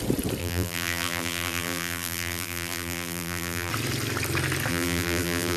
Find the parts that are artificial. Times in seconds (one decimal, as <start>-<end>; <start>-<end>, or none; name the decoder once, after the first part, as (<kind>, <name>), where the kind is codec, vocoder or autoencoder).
0.4-3.7 (vocoder, BigVGAN v2); 4.7-5.6